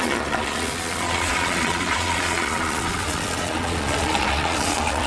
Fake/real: fake